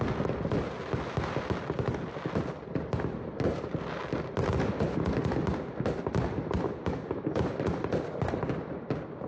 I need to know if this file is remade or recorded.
recorded